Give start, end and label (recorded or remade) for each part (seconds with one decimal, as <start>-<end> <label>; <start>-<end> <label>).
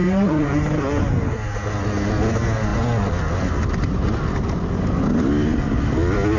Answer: 0.0-1.1 remade; 1.1-6.4 recorded